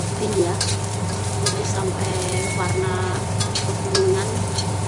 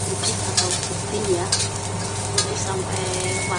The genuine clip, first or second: second